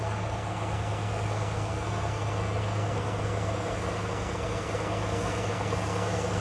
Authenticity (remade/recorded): remade